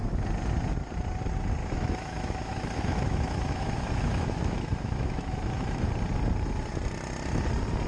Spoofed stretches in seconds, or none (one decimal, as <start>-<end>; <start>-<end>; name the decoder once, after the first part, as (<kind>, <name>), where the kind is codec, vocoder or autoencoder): 1.6-5.9 (autoencoder, DAC-VAE)